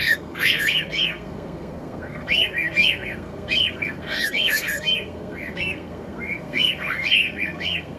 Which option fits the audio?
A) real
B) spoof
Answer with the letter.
B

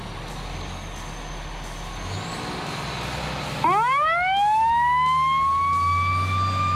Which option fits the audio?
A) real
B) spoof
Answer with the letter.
A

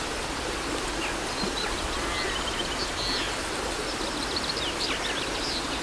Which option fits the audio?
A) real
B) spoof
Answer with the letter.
A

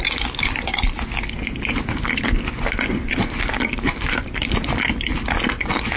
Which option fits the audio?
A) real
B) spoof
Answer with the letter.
A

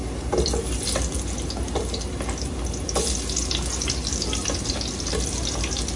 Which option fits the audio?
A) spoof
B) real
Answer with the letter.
B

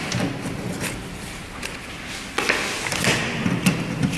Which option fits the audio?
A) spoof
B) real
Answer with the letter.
B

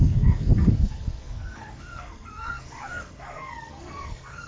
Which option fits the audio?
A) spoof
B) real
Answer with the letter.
A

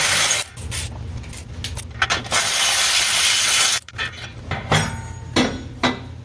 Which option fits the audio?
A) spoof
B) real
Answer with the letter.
B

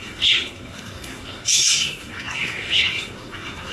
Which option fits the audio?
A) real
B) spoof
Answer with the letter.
B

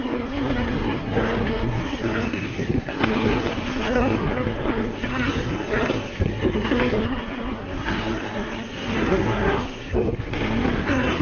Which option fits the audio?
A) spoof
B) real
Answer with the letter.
A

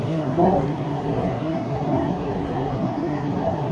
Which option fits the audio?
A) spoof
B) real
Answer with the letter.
A